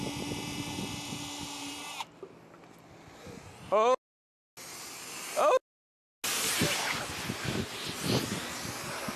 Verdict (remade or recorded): recorded